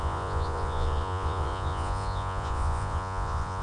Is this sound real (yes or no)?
no